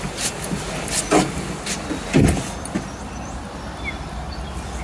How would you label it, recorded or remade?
recorded